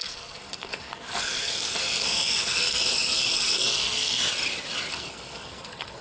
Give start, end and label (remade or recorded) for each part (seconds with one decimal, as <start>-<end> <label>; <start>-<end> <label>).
0.0-4.2 remade; 4.2-4.9 recorded; 4.9-6.0 remade